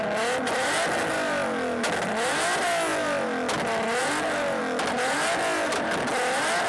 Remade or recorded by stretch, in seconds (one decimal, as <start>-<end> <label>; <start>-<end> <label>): 0.0-6.7 recorded